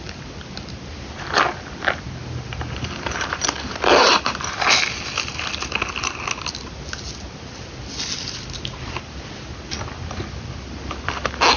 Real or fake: real